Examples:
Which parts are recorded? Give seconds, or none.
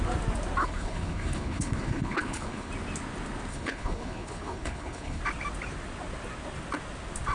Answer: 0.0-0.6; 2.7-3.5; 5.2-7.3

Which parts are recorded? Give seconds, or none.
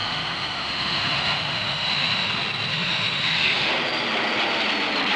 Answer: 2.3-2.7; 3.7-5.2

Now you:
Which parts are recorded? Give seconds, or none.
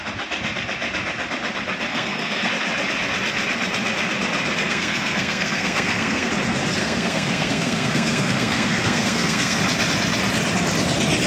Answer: 0.0-1.9; 2.5-4.6; 6.3-6.8; 9.6-11.3